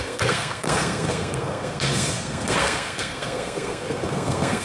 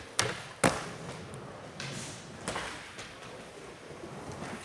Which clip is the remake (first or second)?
first